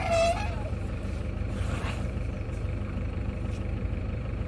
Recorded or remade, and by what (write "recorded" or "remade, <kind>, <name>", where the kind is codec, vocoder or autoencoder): remade, vocoder, BigVGAN v2